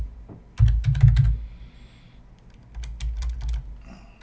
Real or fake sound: real